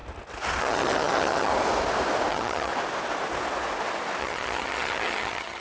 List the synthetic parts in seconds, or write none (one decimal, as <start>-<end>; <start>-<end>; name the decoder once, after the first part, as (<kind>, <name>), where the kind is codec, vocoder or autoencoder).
0.6-1.5 (vocoder, HiFi-GAN); 2.3-2.7; 4.2-5.6